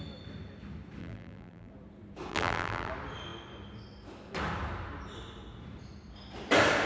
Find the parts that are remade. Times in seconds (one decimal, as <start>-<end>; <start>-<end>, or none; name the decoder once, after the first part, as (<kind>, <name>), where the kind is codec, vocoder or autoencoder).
1.0-1.7 (vocoder, BigVGAN v2); 2.3-2.9